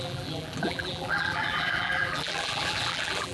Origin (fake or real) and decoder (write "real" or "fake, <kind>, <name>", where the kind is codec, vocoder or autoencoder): fake, vocoder, BigVGAN v2